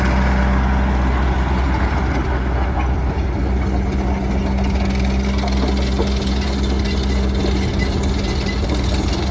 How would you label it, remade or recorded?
recorded